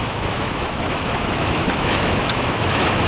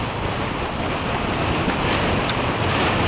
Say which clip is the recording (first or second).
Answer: second